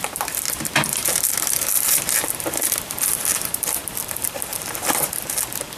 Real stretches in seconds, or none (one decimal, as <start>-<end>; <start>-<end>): none